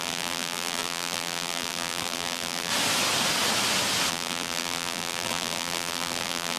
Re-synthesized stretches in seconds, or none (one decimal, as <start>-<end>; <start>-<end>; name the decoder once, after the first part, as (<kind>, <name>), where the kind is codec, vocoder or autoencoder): 0.0-2.7 (vocoder, BigVGAN v2); 4.1-6.6